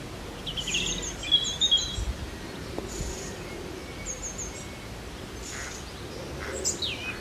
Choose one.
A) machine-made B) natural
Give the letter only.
B